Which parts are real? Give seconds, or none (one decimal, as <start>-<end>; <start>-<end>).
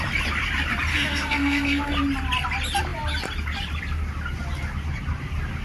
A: 0.0-0.9; 1.9-5.6